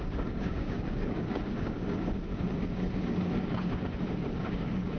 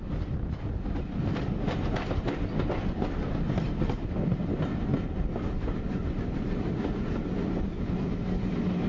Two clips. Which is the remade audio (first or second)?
first